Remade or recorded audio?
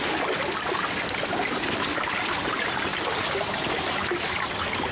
recorded